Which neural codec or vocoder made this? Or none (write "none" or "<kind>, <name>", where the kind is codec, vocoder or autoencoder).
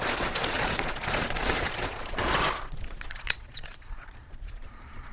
vocoder, Vocos